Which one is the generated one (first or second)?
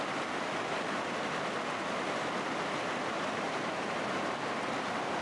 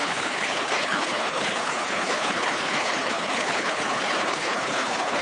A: second